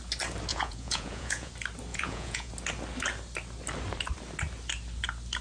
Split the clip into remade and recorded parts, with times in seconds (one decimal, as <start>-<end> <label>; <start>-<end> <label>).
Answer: 0.0-0.5 recorded; 0.5-1.5 remade; 1.5-1.9 recorded; 1.9-2.5 remade; 2.5-5.4 recorded